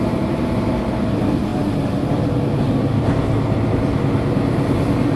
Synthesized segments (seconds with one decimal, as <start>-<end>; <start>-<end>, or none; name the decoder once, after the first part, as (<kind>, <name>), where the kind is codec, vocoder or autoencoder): none